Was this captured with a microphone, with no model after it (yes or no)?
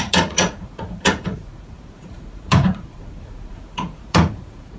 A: no